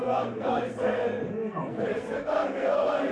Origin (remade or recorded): remade